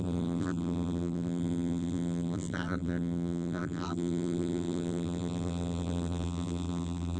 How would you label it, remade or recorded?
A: remade